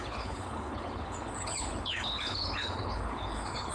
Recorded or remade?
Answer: remade